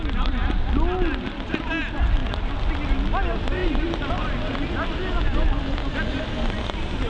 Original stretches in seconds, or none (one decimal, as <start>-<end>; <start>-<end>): 0.0-3.6; 4.1-7.1